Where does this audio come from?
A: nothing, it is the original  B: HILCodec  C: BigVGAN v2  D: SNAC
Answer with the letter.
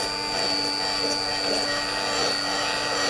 A